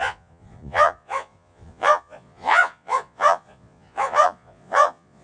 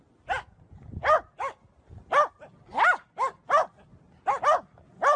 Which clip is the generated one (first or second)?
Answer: first